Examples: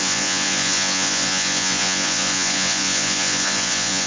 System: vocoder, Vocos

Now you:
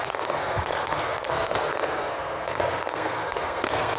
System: codec, SNAC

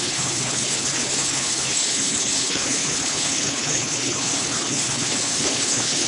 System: codec, HILCodec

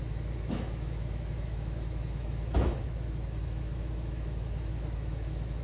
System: autoencoder, DAC-VAE